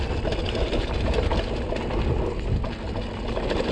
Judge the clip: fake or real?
real